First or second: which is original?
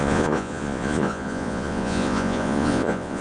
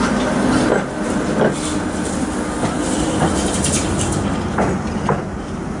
second